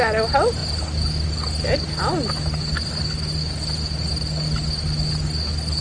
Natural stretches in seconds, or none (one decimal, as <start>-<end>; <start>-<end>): 0.0-5.8